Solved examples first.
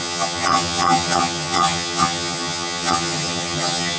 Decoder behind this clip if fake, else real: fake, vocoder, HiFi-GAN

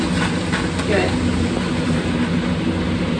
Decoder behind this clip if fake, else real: real